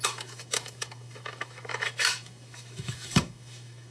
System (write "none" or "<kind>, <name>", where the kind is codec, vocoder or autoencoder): autoencoder, DAC-VAE